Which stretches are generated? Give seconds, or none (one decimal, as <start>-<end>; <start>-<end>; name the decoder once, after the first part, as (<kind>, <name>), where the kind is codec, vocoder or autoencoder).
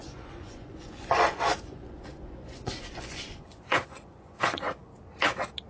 0.0-4.9 (vocoder, Vocos)